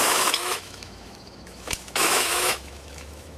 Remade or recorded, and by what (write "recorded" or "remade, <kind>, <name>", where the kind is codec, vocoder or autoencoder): remade, autoencoder, DAC-VAE